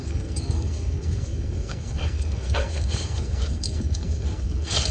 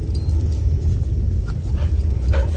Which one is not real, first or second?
first